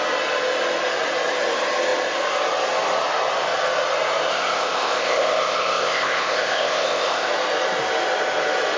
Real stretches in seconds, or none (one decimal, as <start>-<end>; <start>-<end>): 0.0-4.3; 7.3-8.8